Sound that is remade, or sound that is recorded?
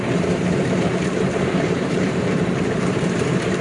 remade